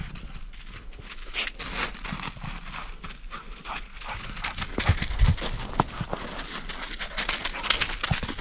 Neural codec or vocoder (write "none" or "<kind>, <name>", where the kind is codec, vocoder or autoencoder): none